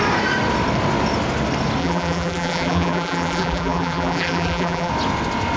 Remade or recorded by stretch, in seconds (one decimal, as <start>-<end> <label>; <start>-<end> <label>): 0.0-1.8 recorded; 1.8-4.9 remade; 4.9-5.6 recorded